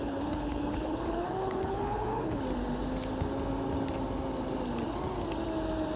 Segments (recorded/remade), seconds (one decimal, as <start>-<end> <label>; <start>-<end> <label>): 0.0-2.4 remade; 2.4-6.0 recorded